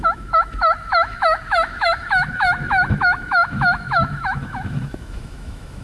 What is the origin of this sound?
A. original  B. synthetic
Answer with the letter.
B